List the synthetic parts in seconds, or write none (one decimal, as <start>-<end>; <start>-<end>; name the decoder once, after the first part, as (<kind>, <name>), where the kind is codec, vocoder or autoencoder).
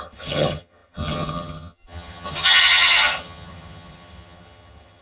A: 0.0-5.0 (vocoder, HiFi-GAN)